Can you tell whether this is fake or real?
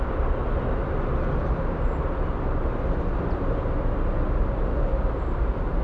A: real